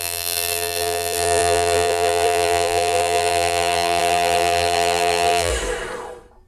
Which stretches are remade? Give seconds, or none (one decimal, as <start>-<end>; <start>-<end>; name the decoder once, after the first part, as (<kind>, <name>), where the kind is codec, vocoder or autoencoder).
0.0-5.5 (vocoder, BigVGAN v2)

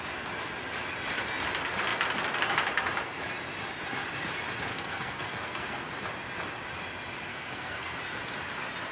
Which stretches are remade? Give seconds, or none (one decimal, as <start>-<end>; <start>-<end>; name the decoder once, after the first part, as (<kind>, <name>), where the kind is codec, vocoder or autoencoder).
4.7-5.9 (codec, SNAC); 7.3-8.0

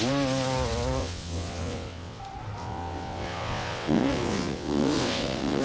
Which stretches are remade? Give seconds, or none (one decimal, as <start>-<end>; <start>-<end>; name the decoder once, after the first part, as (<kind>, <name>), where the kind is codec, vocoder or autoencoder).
1.0-2.2 (vocoder, WaveNeXt); 2.6-5.6

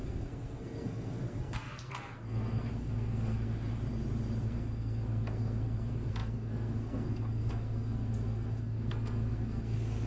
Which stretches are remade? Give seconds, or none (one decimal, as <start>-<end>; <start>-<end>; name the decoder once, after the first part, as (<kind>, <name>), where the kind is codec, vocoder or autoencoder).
0.0-3.5 (codec, SNAC); 4.4-10.1